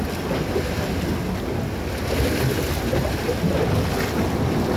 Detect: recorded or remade recorded